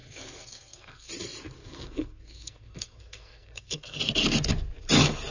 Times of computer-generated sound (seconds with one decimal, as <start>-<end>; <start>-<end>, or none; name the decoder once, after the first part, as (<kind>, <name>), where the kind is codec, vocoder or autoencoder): 0.0-1.1 (codec, SNAC); 1.6-4.0